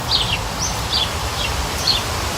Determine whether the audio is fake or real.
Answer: real